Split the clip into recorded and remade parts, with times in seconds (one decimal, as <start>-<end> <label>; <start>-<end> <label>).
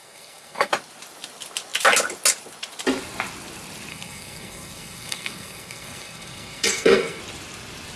0.0-0.7 remade; 0.7-3.9 recorded; 3.9-7.2 remade; 7.2-8.0 recorded